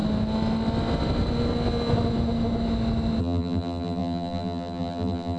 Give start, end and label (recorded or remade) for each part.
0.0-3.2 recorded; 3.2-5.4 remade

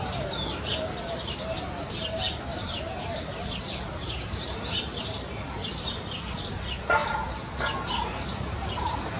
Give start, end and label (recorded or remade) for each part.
0.0-2.5 recorded; 2.5-4.4 remade; 4.4-5.6 recorded; 5.6-6.5 remade; 6.5-9.2 recorded

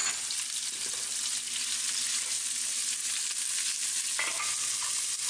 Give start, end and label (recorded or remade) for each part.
0.0-5.3 recorded

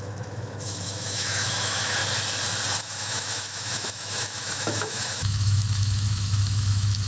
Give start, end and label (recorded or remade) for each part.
0.0-2.0 remade; 2.0-2.8 recorded; 2.8-7.1 remade

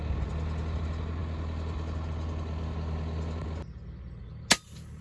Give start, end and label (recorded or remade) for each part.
0.0-5.0 recorded